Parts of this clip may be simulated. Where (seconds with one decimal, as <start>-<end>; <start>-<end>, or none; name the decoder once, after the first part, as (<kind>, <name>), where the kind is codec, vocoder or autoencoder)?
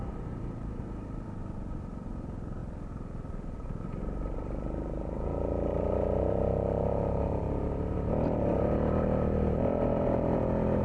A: 0.0-2.6 (vocoder, BigVGAN v2); 7.6-10.8